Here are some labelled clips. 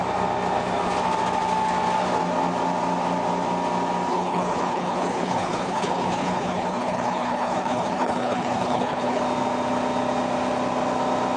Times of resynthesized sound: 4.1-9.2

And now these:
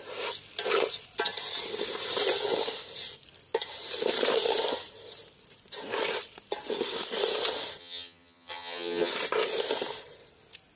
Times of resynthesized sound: 7.8-9.1

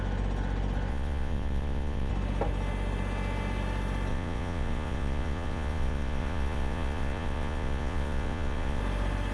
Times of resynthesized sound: 0.9-2.1; 4.1-8.8

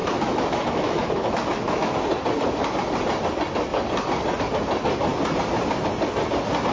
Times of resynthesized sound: 0.0-1.9